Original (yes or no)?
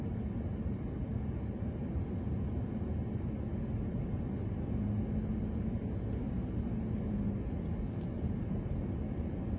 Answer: yes